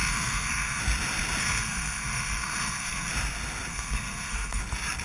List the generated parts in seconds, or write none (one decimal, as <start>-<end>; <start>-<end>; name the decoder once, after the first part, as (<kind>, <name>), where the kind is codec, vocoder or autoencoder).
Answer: 0.0-0.8 (codec, SNAC); 1.4-3.1; 3.7-4.6